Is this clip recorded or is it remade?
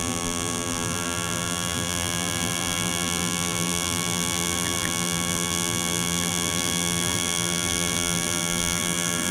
remade